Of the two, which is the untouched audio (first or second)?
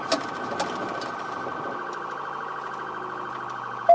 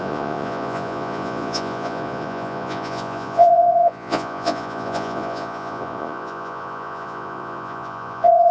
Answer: first